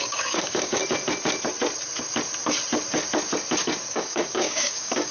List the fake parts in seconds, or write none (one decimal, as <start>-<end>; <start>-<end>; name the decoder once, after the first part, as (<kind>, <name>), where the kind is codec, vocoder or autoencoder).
0.0-0.8 (codec, DAC); 3.9-5.1